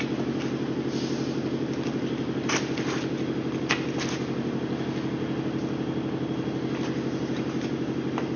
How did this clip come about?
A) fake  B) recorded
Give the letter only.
B